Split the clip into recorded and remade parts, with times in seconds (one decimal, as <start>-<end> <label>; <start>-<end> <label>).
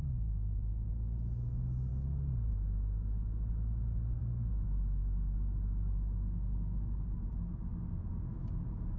0.0-9.0 recorded